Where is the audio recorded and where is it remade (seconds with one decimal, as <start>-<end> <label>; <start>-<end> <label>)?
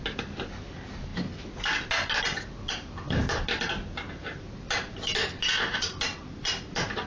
0.0-7.1 recorded